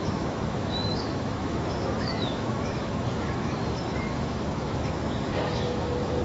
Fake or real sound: fake